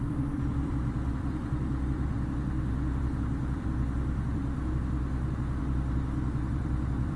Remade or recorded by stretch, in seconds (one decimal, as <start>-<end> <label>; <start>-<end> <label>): 0.0-2.1 remade; 2.1-3.0 recorded; 3.0-4.4 remade; 4.4-5.6 recorded; 5.6-7.2 remade